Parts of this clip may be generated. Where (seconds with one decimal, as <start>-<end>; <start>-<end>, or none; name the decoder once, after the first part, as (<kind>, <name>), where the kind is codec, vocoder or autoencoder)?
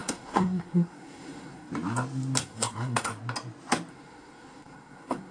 0.0-1.7 (codec, SNAC); 2.4-3.1; 3.9-5.3